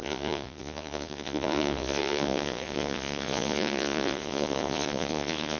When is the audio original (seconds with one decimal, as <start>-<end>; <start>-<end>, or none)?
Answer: none